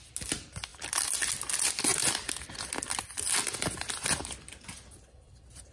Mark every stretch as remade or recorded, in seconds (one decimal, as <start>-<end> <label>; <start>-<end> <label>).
0.0-5.7 recorded